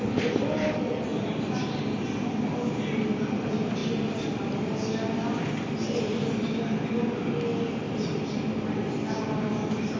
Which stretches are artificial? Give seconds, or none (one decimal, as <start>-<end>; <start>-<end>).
none